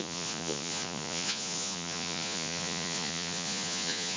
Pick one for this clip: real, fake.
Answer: fake